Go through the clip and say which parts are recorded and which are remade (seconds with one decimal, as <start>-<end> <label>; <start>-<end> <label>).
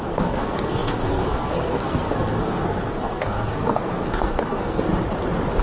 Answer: 0.0-4.9 remade; 4.9-5.6 recorded